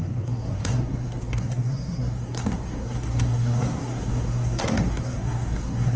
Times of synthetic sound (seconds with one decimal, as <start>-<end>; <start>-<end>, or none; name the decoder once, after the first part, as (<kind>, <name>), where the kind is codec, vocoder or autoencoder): 0.0-6.0 (codec, SNAC)

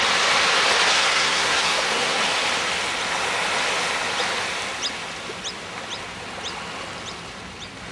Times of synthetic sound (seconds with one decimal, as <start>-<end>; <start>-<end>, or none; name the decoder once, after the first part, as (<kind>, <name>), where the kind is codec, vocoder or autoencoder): 0.9-2.2 (codec, SNAC)

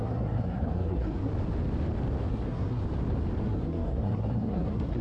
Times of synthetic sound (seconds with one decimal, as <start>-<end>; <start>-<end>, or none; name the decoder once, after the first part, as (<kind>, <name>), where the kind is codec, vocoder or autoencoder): 0.0-1.3 (codec, SNAC); 2.3-2.8; 3.4-5.0

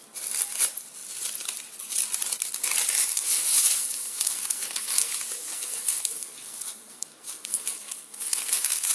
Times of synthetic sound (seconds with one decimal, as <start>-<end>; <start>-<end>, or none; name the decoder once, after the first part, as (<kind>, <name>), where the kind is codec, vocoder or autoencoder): 3.1-5.1 (codec, SNAC); 5.5-8.9

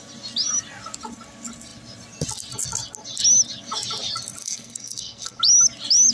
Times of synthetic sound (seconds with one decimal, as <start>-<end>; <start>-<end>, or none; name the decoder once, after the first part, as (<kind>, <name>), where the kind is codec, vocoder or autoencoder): 4.4-5.4 (codec, SNAC)

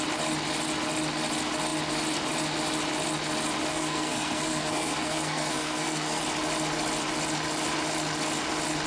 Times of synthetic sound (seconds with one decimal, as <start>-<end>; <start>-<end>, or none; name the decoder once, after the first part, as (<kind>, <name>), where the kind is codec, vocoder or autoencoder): 3.7-6.2 (codec, SNAC)

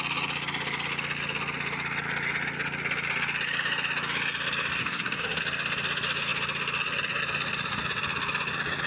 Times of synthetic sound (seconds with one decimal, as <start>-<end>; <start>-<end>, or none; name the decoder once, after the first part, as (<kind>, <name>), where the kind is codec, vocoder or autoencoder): 4.8-5.4 (codec, SNAC)